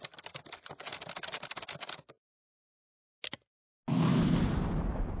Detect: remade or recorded recorded